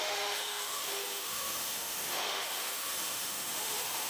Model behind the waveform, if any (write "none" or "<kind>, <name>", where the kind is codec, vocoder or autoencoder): autoencoder, DAC-VAE